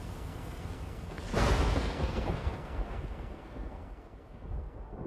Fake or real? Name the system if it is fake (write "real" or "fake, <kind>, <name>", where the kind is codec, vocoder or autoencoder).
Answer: fake, codec, SNAC